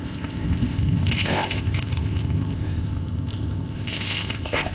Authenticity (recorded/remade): remade